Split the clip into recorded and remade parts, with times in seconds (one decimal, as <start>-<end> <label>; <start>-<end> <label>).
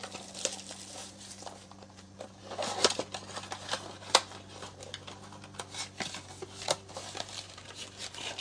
0.0-1.0 recorded; 1.0-2.4 remade; 2.4-8.4 recorded